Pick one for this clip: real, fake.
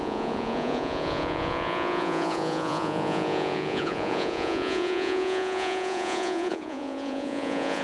fake